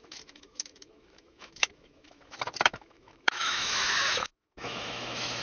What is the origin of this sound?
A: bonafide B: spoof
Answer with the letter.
B